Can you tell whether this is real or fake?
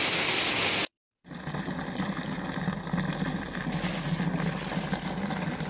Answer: real